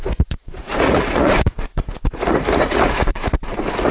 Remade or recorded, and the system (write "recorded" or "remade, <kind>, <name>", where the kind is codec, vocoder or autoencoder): remade, vocoder, Vocos